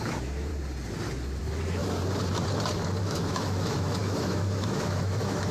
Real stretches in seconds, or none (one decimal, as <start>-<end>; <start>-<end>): 0.5-1.4; 1.8-3.0